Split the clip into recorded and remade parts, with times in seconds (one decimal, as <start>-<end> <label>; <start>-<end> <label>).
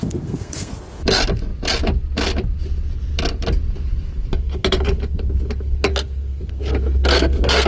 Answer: 0.0-0.7 remade; 0.7-5.9 recorded; 5.9-7.7 remade